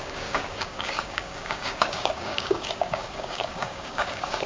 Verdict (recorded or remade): remade